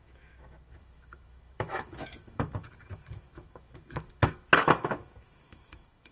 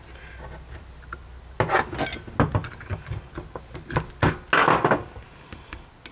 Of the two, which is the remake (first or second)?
first